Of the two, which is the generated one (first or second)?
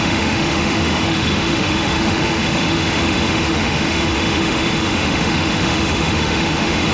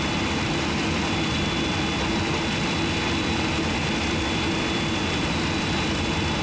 first